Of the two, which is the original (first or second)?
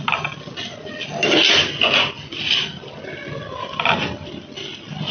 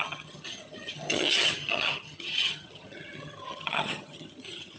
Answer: first